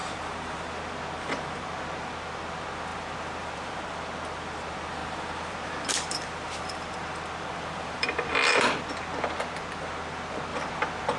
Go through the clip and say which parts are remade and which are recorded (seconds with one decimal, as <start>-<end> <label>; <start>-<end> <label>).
0.0-0.8 remade; 0.8-2.9 recorded; 2.9-3.8 remade; 3.8-5.0 recorded; 5.0-8.9 remade; 8.9-11.2 recorded